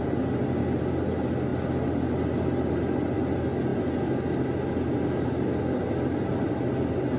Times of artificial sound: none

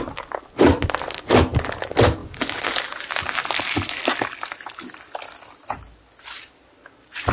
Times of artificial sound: none

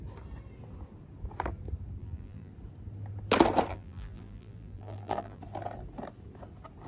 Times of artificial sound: 2.0-2.5 (vocoder, BigVGAN v2); 3.7-5.4

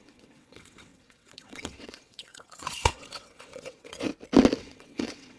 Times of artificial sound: 0.0-4.1 (vocoder, WaveNeXt); 4.6-5.4

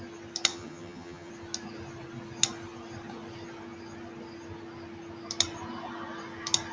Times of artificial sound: 0.5-1.3 (vocoder, HiFi-GAN)

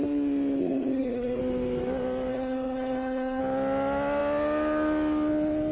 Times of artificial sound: 0.6-1.4 (codec, SNAC); 2.3-3.4